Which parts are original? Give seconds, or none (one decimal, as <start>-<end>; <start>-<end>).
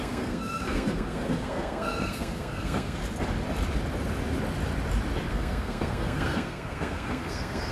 3.0-5.3